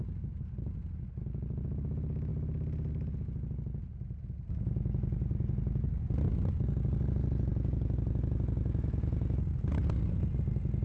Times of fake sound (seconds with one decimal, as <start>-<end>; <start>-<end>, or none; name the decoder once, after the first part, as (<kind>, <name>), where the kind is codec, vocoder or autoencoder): none